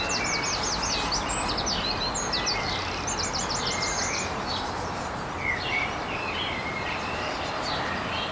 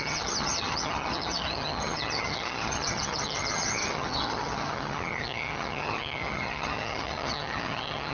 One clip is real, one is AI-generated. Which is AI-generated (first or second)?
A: second